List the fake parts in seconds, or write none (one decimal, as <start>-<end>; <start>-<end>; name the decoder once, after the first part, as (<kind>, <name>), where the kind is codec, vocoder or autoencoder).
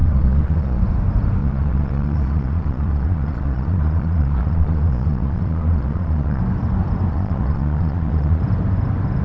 0.0-0.8 (vocoder, Vocos); 1.4-6.4; 7.1-8.4